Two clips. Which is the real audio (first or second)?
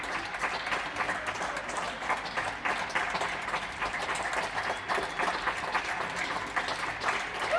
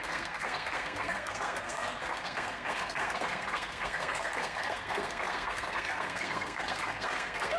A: first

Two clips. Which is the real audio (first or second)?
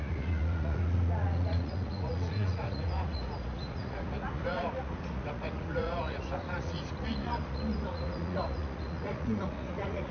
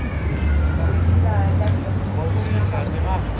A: second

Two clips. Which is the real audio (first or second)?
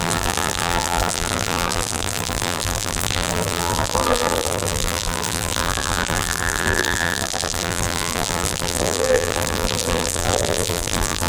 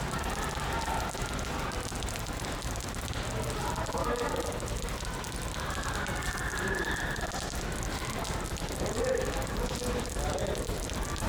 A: second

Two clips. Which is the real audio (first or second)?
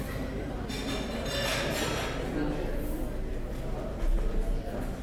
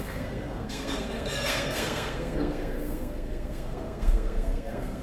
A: first